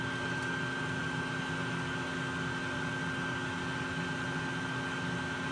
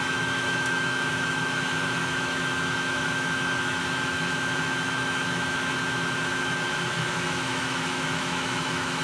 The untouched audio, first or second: first